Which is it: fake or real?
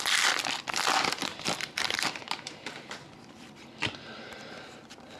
fake